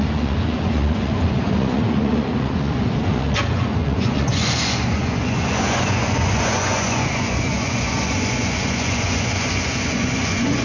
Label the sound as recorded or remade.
remade